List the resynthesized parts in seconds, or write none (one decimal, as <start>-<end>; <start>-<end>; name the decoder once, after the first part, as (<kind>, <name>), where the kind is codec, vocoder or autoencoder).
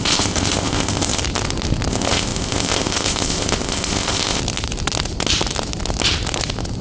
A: 0.0-1.2 (codec, ZipCodec); 1.9-4.4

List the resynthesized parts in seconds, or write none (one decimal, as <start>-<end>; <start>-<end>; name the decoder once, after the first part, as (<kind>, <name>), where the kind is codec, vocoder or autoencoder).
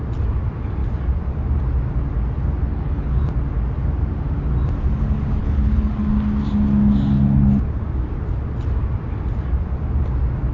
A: 2.6-3.2 (codec, HILCodec); 5.4-6.0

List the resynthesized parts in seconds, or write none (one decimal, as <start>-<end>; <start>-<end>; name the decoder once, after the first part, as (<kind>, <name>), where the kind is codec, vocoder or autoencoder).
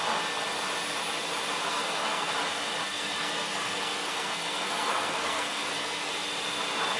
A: 1.7-2.3 (codec, SNAC); 2.9-6.1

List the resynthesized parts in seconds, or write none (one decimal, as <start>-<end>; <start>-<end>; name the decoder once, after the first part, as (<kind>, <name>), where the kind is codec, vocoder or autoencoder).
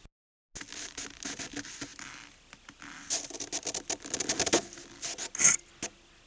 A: none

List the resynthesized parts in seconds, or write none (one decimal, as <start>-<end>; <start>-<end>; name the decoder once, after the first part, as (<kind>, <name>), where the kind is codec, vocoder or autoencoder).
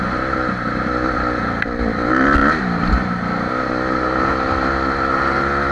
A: none